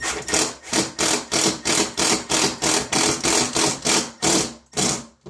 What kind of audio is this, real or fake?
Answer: real